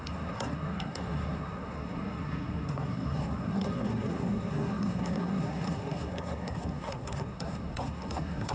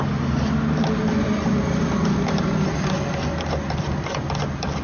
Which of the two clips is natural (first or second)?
second